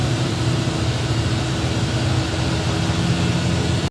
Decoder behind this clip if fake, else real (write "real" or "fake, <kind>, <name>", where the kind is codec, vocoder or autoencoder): real